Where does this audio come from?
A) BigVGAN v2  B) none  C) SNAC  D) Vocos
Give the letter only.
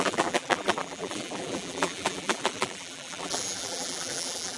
A